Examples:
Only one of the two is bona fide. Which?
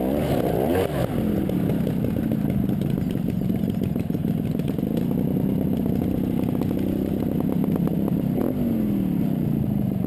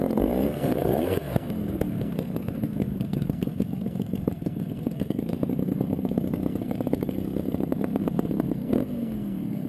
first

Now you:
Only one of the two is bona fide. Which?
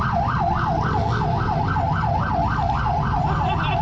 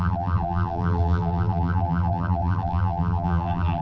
first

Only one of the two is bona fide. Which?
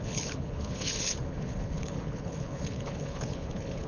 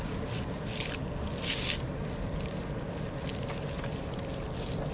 second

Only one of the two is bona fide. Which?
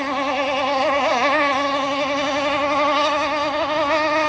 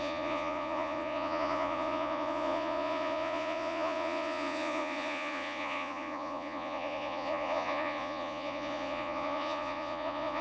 first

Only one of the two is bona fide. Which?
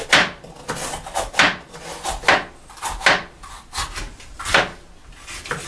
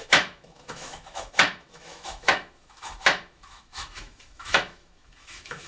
first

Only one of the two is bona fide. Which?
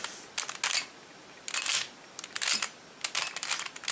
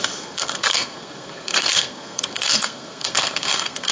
first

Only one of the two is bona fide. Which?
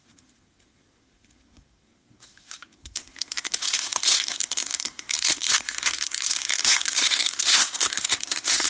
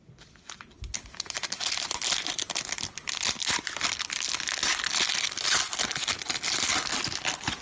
second